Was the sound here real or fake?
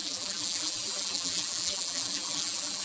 fake